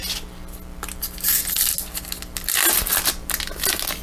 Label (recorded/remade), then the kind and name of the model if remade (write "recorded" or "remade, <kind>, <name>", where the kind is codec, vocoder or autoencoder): recorded